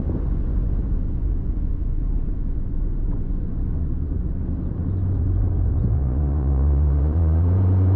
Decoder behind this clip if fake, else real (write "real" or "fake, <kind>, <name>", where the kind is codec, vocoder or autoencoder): fake, vocoder, Vocos